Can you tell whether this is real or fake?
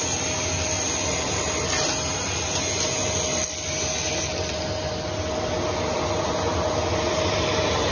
real